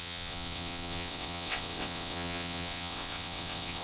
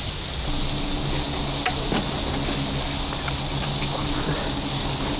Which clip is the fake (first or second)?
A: first